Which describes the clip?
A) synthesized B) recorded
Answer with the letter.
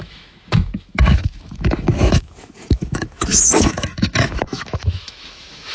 A